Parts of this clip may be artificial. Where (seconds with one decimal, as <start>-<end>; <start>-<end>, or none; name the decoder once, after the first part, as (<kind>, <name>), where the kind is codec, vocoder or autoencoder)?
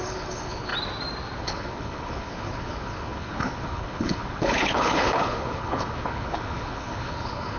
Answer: 0.0-0.7 (codec, HILCodec); 1.4-7.6